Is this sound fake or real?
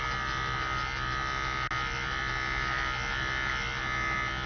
real